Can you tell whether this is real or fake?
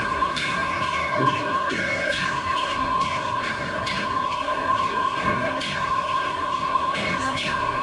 fake